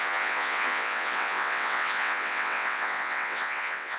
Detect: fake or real fake